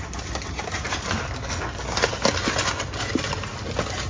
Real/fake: real